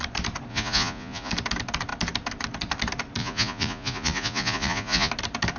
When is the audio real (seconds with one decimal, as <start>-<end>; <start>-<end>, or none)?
0.0-0.5; 1.3-3.2; 5.1-5.6